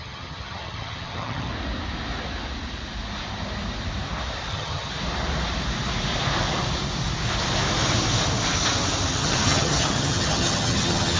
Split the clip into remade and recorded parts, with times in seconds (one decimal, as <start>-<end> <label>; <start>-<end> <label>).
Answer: 0.0-1.5 remade; 1.5-4.5 recorded; 4.5-4.9 remade; 4.9-9.1 recorded; 9.1-11.2 remade